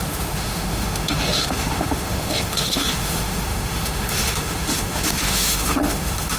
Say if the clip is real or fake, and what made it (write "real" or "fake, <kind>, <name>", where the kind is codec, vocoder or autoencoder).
fake, autoencoder, DAC-VAE